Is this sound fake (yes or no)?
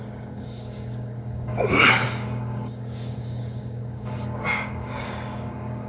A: yes